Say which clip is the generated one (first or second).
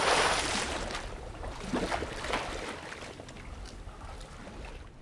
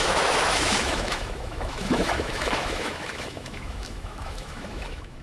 second